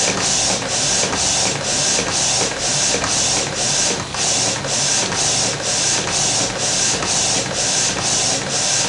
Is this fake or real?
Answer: real